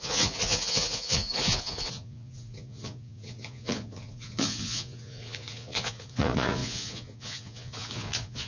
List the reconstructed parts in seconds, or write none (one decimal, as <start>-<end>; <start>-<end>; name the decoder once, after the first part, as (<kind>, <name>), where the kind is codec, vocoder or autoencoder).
0.0-8.5 (vocoder, Vocos)